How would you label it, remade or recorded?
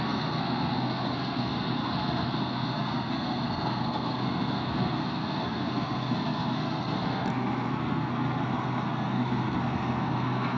remade